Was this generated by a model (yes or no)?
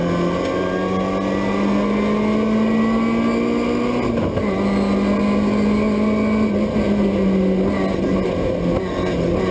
no